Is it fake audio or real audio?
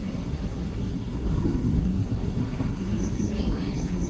fake